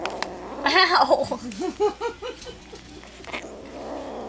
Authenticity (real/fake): real